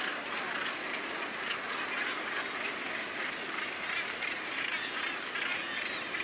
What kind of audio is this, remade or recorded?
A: recorded